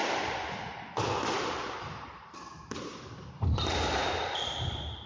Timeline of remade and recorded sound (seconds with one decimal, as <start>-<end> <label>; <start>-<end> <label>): 0.0-0.9 remade; 0.9-2.9 recorded; 2.9-3.6 remade; 3.6-4.0 recorded; 4.0-5.1 remade